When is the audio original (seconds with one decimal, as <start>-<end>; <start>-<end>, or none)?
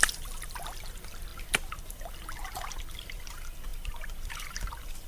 none